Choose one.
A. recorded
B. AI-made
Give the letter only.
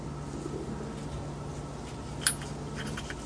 A